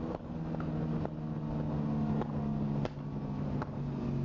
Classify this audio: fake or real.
real